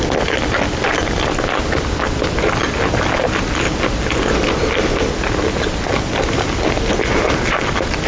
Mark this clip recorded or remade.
recorded